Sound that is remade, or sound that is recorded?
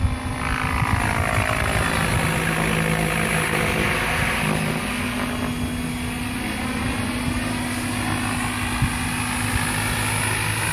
recorded